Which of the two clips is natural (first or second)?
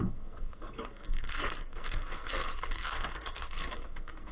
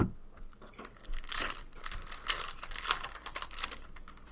second